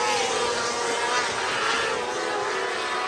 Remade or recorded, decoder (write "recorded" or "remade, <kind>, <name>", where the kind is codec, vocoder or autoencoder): recorded